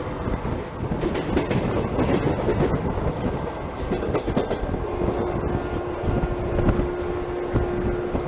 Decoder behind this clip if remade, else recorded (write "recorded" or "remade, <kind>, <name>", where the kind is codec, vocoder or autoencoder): recorded